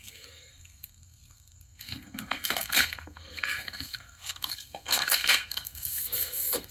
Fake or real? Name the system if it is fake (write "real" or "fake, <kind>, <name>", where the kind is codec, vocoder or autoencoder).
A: fake, codec, SNAC